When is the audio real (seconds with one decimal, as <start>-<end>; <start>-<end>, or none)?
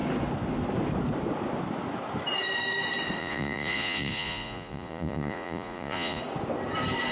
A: 0.0-3.2; 6.2-7.1